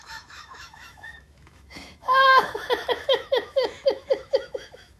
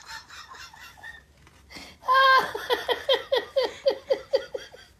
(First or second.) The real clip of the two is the second